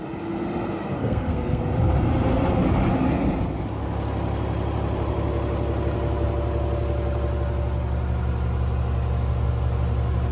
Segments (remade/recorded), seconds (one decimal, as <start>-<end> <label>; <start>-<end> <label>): 0.0-1.0 recorded; 1.0-1.6 remade; 1.6-10.3 recorded